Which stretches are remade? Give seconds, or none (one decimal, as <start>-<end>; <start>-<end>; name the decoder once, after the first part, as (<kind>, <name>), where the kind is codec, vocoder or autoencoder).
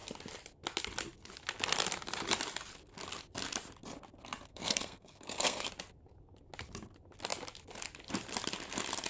4.5-5.7 (codec, SNAC)